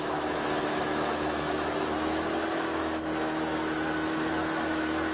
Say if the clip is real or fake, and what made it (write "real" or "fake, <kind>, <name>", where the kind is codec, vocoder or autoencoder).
fake, autoencoder, DAC-VAE